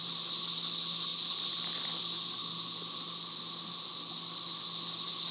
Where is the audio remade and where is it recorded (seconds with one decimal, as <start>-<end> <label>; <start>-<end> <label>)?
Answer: 0.0-5.3 recorded